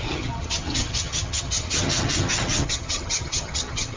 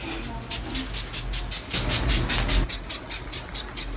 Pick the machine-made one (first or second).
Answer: first